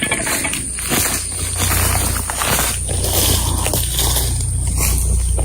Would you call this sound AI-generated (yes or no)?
no